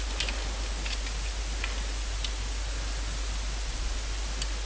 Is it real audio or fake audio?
real